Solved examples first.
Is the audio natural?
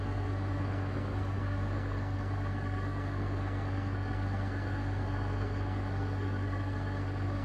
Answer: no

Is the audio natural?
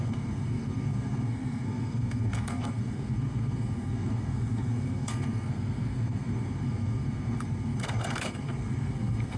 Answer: no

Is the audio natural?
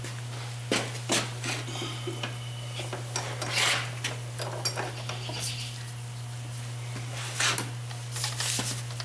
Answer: yes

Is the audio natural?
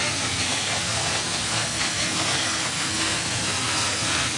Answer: no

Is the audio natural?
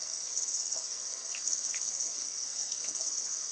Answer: no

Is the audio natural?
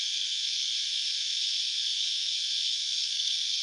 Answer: no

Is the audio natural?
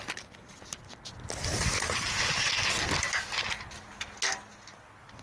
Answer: yes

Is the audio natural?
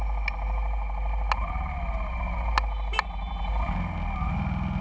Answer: yes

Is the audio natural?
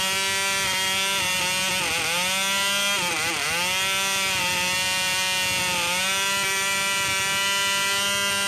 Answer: yes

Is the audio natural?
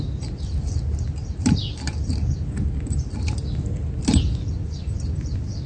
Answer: yes